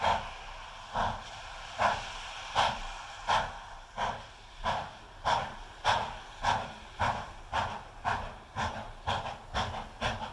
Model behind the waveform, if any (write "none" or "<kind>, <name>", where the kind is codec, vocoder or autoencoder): none